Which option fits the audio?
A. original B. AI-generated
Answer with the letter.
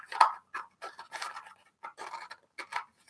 A